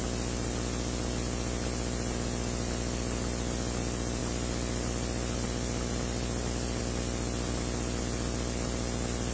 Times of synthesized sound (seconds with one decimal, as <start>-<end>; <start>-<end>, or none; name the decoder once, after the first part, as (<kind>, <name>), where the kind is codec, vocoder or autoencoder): none